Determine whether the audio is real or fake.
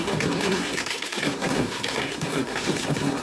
fake